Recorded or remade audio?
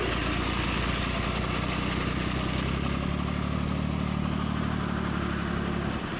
recorded